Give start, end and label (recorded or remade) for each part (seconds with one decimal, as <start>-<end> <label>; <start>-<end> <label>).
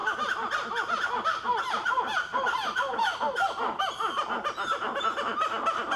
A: 0.0-6.0 recorded